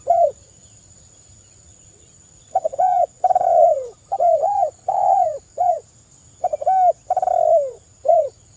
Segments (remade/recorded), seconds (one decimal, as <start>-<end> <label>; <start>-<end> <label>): 0.0-5.8 remade; 5.8-7.7 recorded; 7.7-8.6 remade